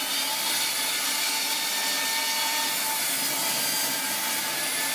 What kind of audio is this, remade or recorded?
recorded